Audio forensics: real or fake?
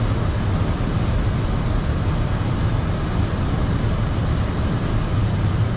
real